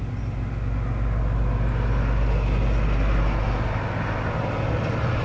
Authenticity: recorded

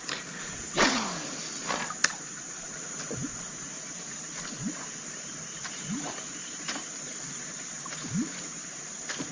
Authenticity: recorded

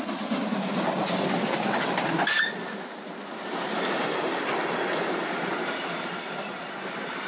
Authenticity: recorded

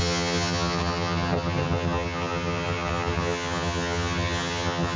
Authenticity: remade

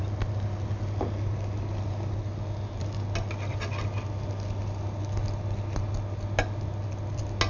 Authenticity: recorded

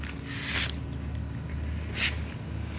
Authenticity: recorded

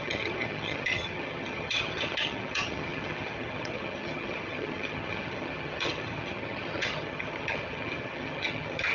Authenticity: remade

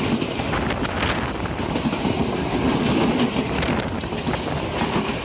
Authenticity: recorded